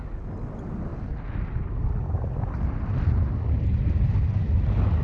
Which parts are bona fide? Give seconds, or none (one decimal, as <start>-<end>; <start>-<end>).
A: 0.0-5.0